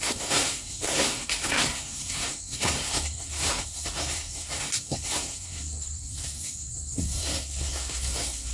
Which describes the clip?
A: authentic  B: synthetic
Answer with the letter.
B